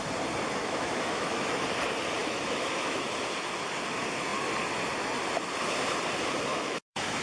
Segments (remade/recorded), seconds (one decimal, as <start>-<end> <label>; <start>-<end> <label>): 0.0-0.6 recorded; 0.6-1.6 remade; 1.6-2.2 recorded; 2.2-3.1 remade; 3.1-6.5 recorded; 6.5-7.2 remade